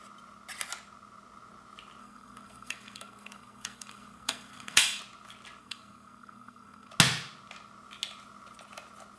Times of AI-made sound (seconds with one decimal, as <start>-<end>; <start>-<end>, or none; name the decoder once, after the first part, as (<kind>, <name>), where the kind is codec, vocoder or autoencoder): 2.0-5.0 (codec, SNAC); 5.6-6.9

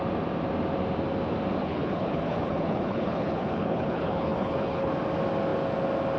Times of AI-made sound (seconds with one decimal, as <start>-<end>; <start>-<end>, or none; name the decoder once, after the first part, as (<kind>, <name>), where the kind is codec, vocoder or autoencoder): 1.6-4.9 (codec, HILCodec)

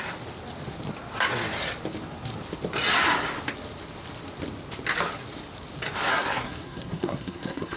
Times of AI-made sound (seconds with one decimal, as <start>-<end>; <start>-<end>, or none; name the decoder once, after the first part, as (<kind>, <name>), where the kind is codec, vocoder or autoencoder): 6.1-7.8 (codec, SNAC)

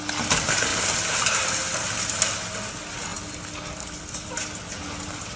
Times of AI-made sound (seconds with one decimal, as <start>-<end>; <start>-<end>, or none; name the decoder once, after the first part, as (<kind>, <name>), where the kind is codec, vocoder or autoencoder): none

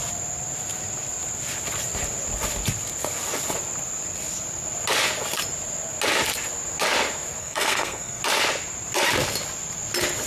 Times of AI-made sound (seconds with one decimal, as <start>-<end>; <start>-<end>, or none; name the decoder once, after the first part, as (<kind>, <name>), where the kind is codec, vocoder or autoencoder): 7.4-8.2 (codec, SNAC)

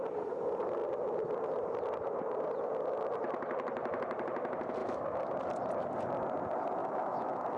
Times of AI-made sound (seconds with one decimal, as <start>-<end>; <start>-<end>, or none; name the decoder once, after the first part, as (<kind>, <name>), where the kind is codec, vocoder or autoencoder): 4.8-5.4 (autoencoder, DAC-VAE); 6.8-7.6